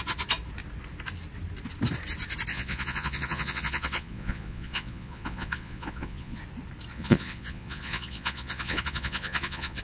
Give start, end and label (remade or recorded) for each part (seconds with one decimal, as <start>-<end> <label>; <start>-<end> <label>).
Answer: 0.0-2.5 recorded; 2.5-6.4 remade; 6.4-6.9 recorded; 6.9-9.8 remade